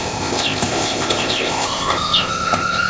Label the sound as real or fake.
fake